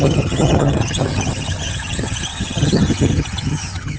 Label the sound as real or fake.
fake